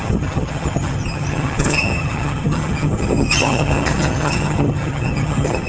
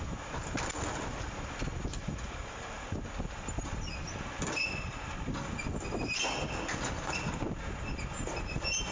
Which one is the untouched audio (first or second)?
second